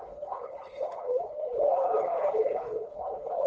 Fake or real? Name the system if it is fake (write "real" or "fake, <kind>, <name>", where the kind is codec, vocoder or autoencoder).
fake, codec, HILCodec